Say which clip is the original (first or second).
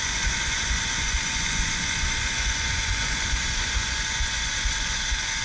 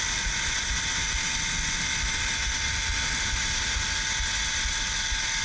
second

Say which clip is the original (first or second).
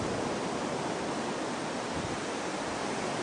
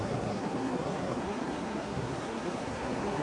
first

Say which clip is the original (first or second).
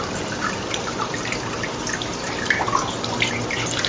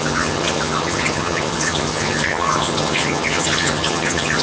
first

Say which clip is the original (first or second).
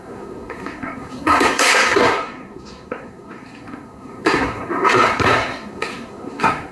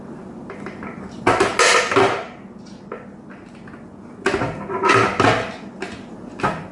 second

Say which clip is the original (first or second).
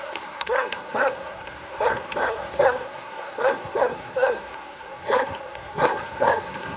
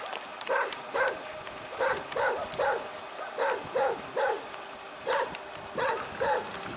second